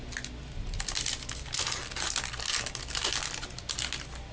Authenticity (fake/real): real